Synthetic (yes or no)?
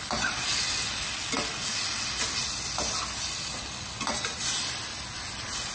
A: no